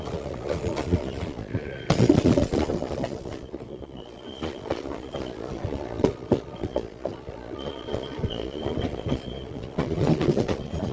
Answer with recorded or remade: remade